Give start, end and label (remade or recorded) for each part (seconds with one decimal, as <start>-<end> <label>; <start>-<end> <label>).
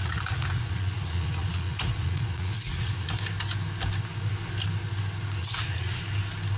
0.0-3.1 remade; 3.1-5.4 recorded; 5.4-6.0 remade; 6.0-6.6 recorded